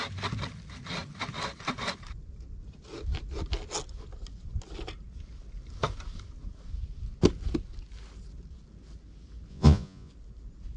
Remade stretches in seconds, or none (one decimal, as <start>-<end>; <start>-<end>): 9.5-10.1